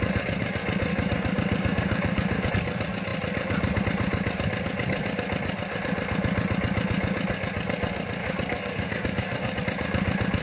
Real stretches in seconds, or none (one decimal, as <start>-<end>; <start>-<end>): 0.0-0.9; 2.5-8.2; 9.6-10.4